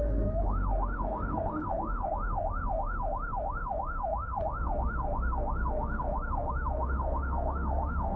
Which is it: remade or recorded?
remade